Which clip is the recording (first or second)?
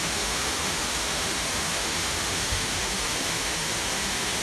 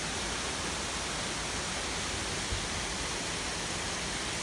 second